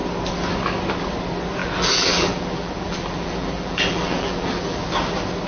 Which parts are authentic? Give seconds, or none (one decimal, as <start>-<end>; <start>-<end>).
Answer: 0.0-1.6; 4.9-5.5

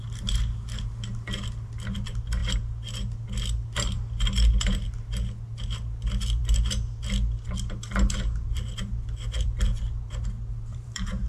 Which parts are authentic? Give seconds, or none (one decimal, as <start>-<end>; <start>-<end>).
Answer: 0.0-10.7

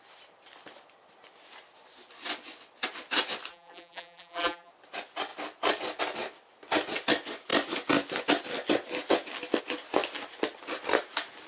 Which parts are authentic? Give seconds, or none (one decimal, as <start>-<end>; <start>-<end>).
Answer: 0.0-3.5; 4.7-11.5

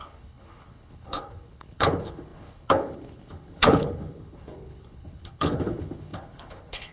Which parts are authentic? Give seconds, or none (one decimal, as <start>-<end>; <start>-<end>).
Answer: none

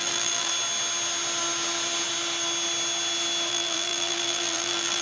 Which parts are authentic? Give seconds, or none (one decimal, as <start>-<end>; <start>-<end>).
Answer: 0.5-3.5

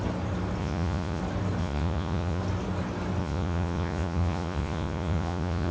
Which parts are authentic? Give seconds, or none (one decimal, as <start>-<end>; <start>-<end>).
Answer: 0.0-0.6; 1.2-1.6; 2.4-3.2

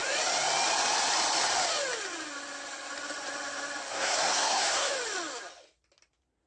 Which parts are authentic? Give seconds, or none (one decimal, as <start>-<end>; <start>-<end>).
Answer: 0.0-3.9; 4.9-6.5